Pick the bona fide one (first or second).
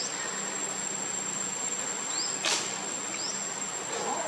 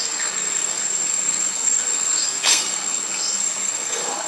first